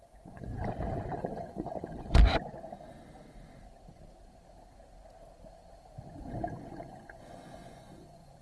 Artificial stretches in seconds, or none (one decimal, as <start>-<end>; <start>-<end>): 0.0-0.5; 1.2-2.2; 6.2-8.4